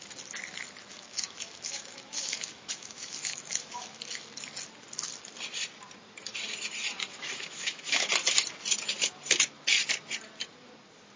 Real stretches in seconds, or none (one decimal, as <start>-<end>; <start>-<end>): 0.0-0.8; 4.0-7.0; 8.1-11.2